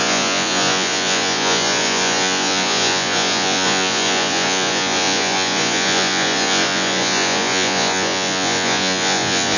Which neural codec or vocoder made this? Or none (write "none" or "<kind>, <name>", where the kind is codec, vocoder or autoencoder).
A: vocoder, Vocos